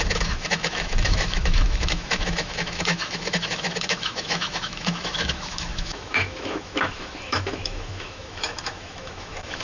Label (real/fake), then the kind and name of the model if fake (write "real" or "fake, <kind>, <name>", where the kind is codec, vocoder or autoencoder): fake, autoencoder, DAC-VAE